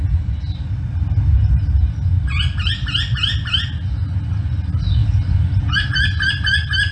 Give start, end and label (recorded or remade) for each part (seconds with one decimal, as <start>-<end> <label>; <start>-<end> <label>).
0.0-6.9 recorded

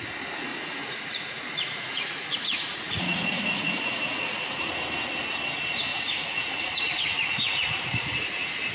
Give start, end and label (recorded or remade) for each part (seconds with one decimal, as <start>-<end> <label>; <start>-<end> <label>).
0.0-0.5 recorded; 0.5-4.7 remade; 4.7-5.9 recorded; 5.9-8.7 remade

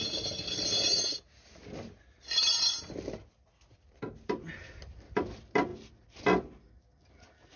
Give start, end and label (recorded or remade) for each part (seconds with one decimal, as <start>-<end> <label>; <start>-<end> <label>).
0.0-7.6 recorded

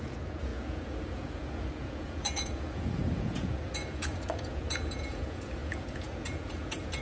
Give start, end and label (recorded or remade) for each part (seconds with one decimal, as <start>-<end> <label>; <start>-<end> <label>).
0.0-7.0 remade

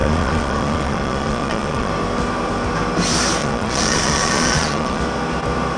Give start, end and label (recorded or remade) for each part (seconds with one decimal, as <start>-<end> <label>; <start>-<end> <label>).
0.0-1.9 remade; 1.9-3.4 recorded; 3.4-5.0 remade; 5.0-5.8 recorded

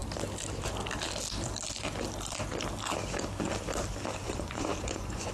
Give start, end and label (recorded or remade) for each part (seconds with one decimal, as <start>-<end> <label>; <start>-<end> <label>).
0.0-4.2 recorded; 4.2-5.3 remade

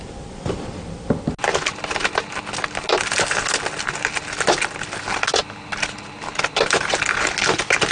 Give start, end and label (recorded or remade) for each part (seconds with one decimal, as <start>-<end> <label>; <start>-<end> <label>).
0.0-7.9 recorded